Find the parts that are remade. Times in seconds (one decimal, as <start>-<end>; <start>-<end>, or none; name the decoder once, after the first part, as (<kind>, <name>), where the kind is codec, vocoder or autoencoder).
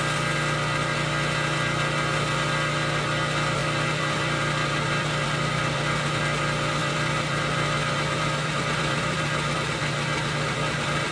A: 3.6-6.2 (vocoder, BigVGAN v2); 6.8-9.7